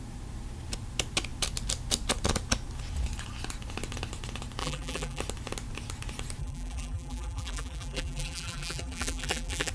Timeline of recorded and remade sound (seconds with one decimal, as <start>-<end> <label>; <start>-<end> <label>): 0.0-4.6 recorded; 4.6-5.2 remade; 5.2-6.4 recorded; 6.4-9.7 remade